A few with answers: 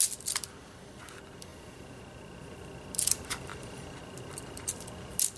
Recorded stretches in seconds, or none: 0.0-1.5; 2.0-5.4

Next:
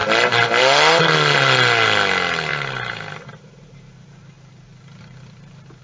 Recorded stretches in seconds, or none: 0.0-5.8

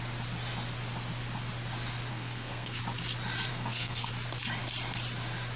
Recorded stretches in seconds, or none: 0.0-2.1; 2.8-3.5; 4.1-5.6

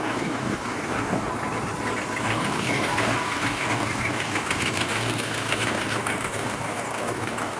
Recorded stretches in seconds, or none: 1.3-2.2

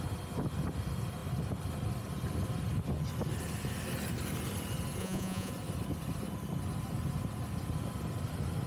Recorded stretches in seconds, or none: 0.0-5.0; 5.5-8.7

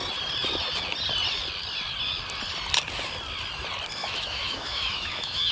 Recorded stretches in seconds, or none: 0.0-4.0

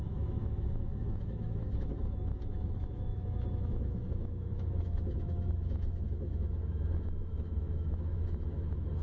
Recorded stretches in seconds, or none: none